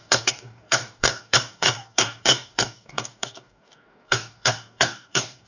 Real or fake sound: fake